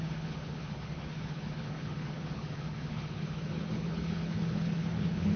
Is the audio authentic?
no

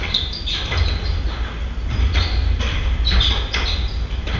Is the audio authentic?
yes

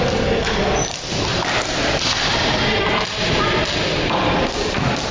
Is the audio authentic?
yes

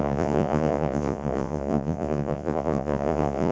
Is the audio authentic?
no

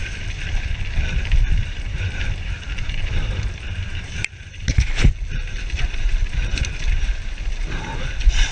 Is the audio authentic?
no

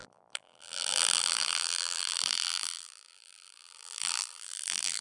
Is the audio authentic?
no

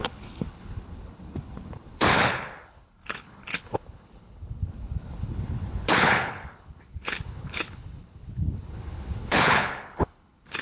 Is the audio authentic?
no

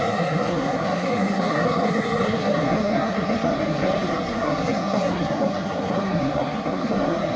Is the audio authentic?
no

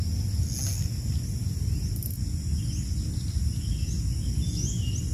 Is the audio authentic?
yes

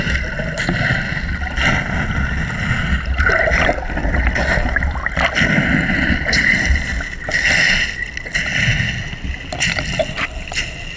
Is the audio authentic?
yes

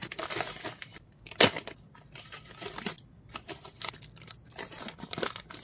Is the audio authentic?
yes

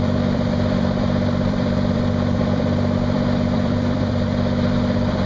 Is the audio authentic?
no